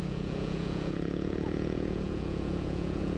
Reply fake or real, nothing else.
fake